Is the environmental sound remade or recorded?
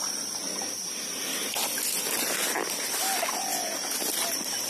recorded